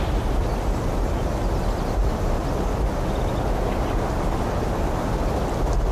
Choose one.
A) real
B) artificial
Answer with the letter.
A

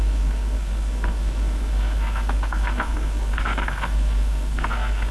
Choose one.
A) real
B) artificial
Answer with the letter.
B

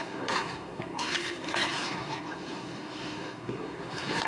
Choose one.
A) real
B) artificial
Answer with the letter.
B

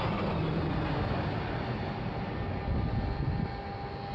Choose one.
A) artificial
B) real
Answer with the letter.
B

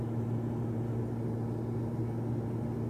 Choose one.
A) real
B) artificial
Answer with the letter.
A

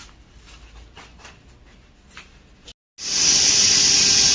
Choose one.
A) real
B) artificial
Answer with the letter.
A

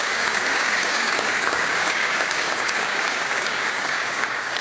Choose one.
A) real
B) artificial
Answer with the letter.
B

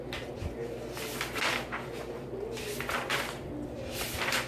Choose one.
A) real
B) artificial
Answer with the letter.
A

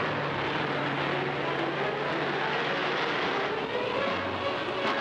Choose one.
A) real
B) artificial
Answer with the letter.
A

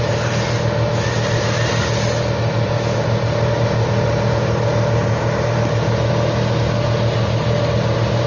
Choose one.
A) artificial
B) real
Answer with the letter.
B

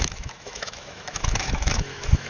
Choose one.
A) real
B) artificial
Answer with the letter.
B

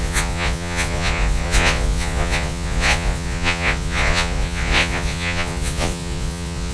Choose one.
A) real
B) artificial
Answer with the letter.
B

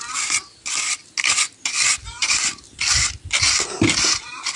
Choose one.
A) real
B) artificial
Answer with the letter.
A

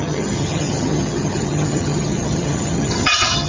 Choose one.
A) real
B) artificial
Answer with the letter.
B